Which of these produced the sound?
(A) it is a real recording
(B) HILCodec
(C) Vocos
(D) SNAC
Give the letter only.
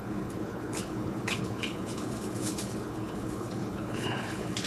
B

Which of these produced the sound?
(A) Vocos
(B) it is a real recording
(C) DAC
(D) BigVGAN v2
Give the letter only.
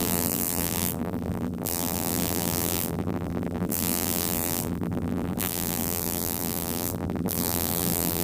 D